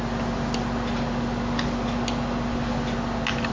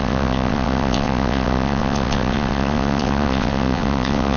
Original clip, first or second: first